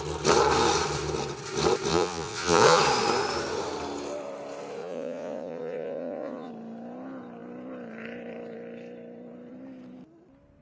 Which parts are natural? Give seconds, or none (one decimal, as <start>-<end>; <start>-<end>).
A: 0.0-1.9; 2.8-4.8; 6.5-10.6